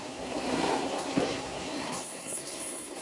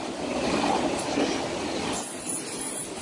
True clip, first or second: second